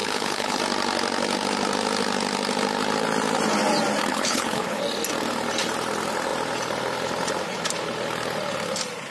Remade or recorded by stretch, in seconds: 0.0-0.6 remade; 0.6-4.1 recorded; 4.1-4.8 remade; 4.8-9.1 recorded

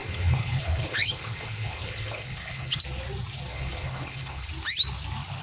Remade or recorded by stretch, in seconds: 0.0-2.8 remade; 2.8-3.5 recorded; 3.5-4.5 remade; 4.5-5.4 recorded

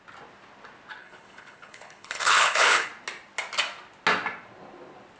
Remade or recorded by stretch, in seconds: 0.0-1.0 recorded; 1.0-2.9 remade; 2.9-5.2 recorded

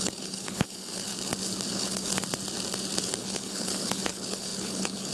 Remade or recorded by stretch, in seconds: 0.0-1.1 remade; 1.1-1.7 recorded; 1.7-2.1 remade; 2.1-3.0 recorded; 3.0-5.1 remade

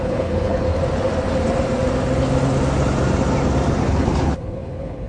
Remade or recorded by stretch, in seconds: 0.0-0.7 remade; 0.7-3.8 recorded; 3.8-5.1 remade

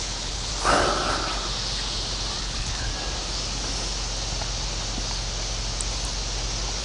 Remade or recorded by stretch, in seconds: 0.0-0.5 remade; 0.5-2.4 recorded; 2.4-2.9 remade; 2.9-6.8 recorded